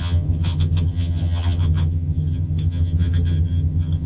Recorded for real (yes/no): no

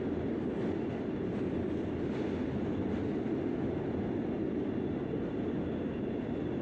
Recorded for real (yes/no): yes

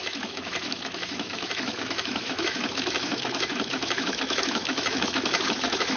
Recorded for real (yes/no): no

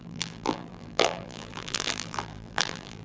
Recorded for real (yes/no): no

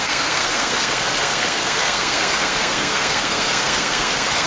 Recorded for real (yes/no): no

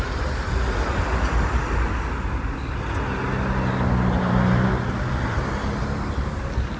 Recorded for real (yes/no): yes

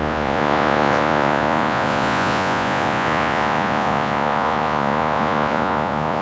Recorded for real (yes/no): no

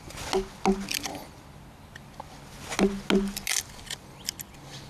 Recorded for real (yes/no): yes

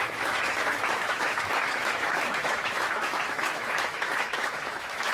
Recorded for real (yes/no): no